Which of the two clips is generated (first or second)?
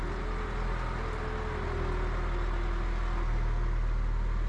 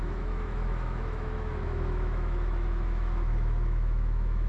second